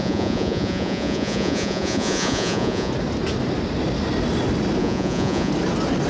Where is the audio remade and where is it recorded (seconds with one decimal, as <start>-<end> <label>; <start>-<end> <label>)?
0.0-2.9 remade; 2.9-4.8 recorded; 4.8-5.5 remade; 5.5-6.1 recorded